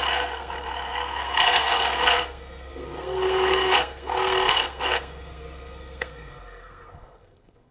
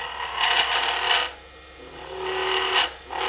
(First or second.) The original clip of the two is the second